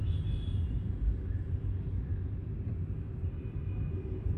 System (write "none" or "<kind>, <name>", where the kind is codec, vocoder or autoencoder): none